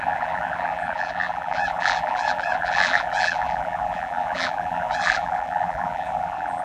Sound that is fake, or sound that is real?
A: fake